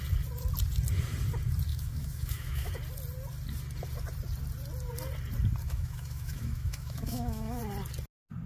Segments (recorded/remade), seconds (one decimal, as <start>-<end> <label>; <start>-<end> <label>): 0.0-1.7 recorded; 1.7-2.7 remade; 2.7-5.6 recorded; 5.6-7.6 remade; 7.6-8.5 recorded